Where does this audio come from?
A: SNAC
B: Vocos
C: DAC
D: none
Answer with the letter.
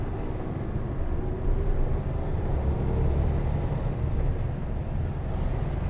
D